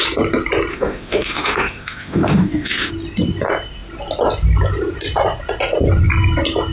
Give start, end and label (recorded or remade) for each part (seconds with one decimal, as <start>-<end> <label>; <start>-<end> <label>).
0.0-0.7 recorded; 0.7-2.9 remade; 2.9-6.7 recorded